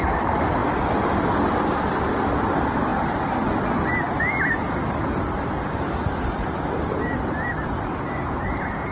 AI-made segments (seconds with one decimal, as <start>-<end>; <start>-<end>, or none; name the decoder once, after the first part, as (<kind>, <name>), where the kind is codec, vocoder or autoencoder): 0.0-2.9 (vocoder, BigVGAN v2); 3.9-8.9